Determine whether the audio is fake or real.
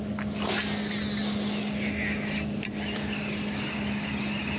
real